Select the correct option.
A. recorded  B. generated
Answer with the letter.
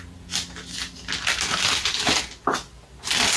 A